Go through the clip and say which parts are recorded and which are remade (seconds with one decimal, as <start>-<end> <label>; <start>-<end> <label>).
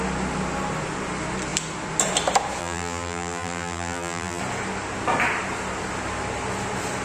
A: 0.0-2.6 recorded; 2.6-4.4 remade; 4.4-7.0 recorded